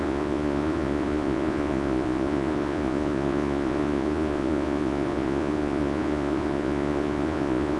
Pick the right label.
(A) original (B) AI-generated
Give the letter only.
B